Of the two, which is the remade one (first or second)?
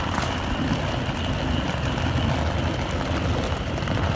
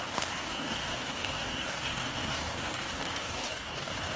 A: second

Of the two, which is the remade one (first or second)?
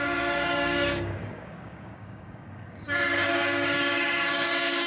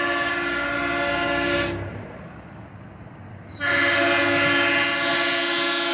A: first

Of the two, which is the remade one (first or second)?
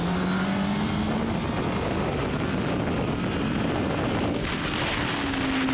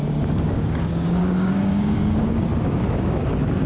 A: second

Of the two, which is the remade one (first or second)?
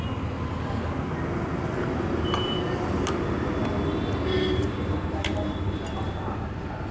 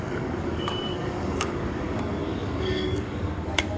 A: second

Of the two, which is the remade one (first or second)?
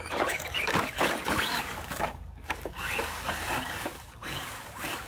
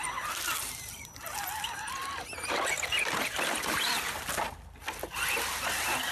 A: first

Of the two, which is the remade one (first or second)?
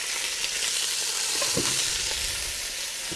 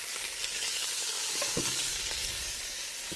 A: second